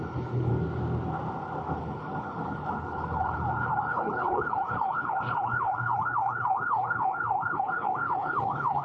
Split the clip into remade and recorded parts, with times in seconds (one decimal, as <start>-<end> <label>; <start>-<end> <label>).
0.0-0.5 remade; 0.5-1.8 recorded; 1.8-8.8 remade